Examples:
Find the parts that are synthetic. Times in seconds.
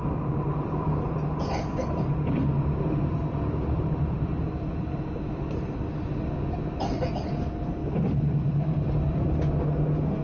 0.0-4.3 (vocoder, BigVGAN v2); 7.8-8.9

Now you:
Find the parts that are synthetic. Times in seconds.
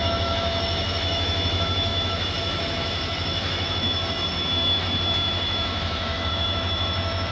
0.0-7.3 (autoencoder, DAC-VAE)